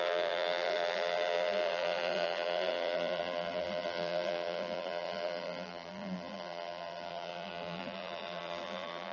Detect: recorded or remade remade